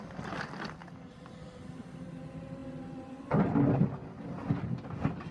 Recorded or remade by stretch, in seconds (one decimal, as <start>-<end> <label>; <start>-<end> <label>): 0.0-5.3 recorded